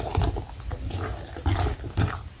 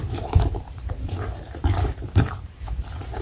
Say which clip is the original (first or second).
first